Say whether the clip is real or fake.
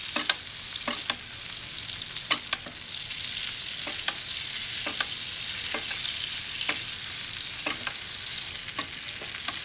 real